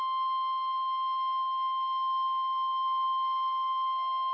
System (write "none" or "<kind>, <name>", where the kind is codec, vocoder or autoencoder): codec, SNAC